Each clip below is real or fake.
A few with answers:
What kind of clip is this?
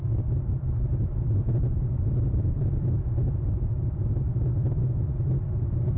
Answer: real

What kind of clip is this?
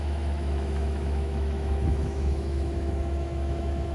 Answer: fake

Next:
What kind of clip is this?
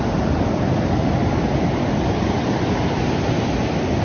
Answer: real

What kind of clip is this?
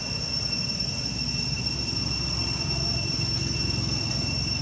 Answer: real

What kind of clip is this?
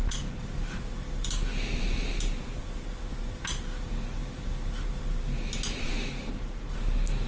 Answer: real